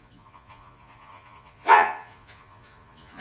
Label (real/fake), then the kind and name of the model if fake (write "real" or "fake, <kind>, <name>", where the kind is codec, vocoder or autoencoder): fake, vocoder, Vocos